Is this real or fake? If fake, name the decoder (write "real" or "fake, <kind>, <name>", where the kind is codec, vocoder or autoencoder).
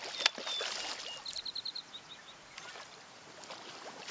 real